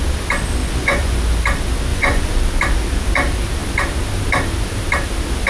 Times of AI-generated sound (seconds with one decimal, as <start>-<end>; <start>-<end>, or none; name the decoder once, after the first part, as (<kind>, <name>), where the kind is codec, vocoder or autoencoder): 0.6-1.2 (vocoder, Vocos); 1.9-2.4